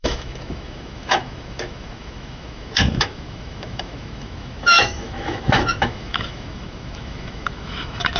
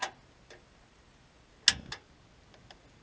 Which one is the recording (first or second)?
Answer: second